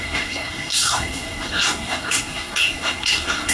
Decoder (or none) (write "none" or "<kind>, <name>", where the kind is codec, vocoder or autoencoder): codec, SNAC